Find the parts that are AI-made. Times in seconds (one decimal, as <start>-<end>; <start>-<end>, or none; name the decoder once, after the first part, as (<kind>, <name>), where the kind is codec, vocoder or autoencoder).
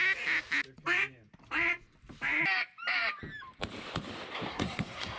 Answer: 4.5-5.2 (codec, SNAC)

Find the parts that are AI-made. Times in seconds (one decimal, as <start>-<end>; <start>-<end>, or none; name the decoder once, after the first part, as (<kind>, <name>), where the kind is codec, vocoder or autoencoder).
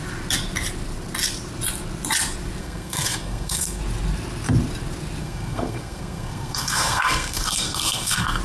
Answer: 2.6-3.8 (codec, SNAC); 5.2-8.4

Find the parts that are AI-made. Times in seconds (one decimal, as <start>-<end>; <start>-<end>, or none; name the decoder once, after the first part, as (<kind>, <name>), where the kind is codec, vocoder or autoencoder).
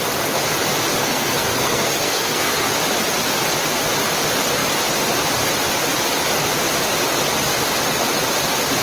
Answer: 1.0-2.7 (codec, SNAC)